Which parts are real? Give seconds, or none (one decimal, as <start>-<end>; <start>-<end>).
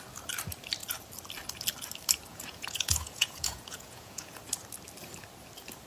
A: 0.0-2.3; 4.4-5.9